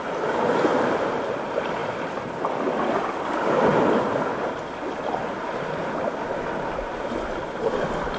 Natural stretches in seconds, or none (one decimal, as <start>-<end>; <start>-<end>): 0.0-8.2